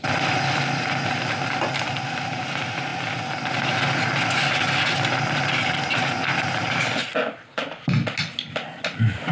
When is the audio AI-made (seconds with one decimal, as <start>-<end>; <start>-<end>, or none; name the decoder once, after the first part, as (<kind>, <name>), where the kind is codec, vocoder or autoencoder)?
none